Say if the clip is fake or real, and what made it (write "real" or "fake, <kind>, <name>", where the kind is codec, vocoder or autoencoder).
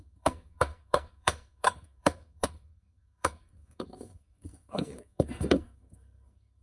fake, codec, SNAC